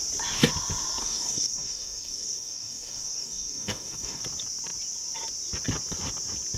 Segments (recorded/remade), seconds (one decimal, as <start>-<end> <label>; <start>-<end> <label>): 0.0-1.0 recorded; 1.0-4.2 remade; 4.2-6.6 recorded